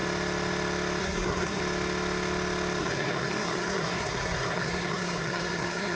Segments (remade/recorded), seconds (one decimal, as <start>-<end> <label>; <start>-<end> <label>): 0.0-1.0 recorded; 1.0-1.6 remade; 1.6-2.8 recorded; 2.8-6.0 remade

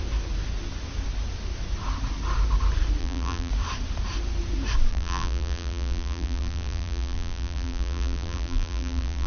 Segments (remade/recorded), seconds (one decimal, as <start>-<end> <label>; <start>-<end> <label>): 0.0-3.0 recorded; 3.0-3.5 remade; 3.5-4.9 recorded; 4.9-9.3 remade

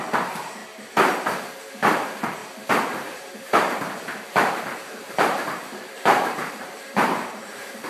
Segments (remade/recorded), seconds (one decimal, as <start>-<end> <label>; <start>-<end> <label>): 0.0-0.6 remade; 0.6-1.7 recorded; 1.7-2.4 remade; 2.4-3.1 recorded; 3.1-7.9 remade